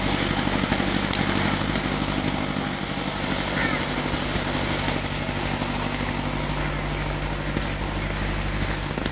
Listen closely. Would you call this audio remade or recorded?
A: recorded